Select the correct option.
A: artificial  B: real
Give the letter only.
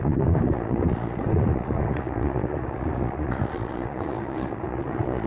A